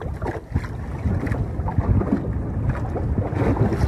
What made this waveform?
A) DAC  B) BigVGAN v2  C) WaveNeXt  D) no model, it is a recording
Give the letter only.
D